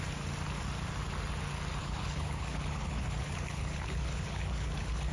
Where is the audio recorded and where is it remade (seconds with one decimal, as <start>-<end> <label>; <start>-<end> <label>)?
0.0-1.8 recorded; 1.8-5.1 remade